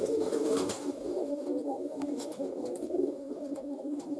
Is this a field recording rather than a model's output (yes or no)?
no